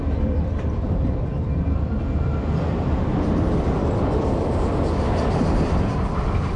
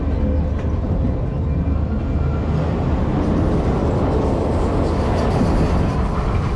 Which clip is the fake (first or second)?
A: first